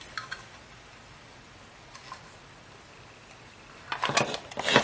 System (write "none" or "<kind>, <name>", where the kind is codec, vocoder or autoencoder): none